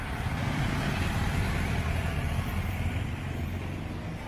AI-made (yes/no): no